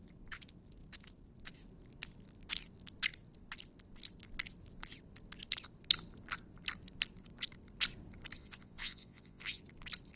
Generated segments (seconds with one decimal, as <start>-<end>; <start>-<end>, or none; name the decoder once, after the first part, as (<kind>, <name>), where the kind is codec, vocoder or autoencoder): 8.4-9.6 (vocoder, Vocos)